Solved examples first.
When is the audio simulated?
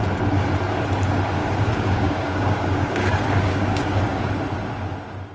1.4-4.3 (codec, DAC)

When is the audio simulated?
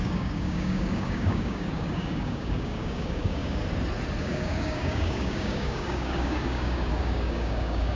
0.0-3.6 (codec, DAC); 4.2-7.9